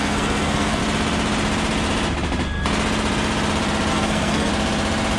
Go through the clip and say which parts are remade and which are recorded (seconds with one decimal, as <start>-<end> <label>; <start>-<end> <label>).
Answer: 0.0-0.8 remade; 0.8-3.9 recorded; 3.9-4.5 remade; 4.5-5.2 recorded